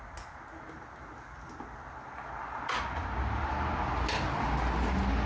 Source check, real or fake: real